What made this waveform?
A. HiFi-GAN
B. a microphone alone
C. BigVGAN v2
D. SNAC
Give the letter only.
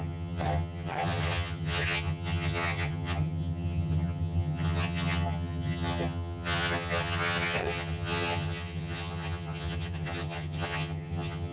A